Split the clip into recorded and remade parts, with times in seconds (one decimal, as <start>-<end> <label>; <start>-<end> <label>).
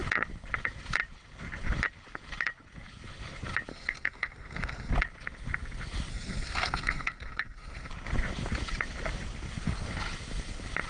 0.0-3.7 recorded; 3.7-4.9 remade; 4.9-6.1 recorded; 6.1-7.9 remade; 7.9-10.9 recorded